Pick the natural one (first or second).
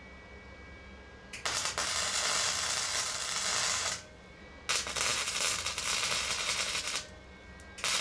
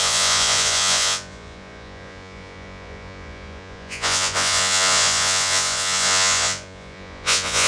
first